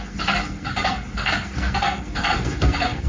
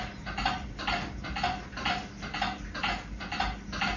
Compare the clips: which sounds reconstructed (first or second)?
first